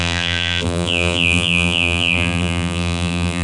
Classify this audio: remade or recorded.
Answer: remade